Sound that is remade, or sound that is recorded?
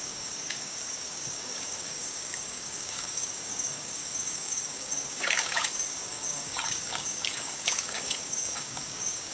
remade